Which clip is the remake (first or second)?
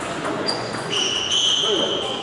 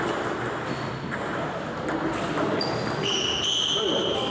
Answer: first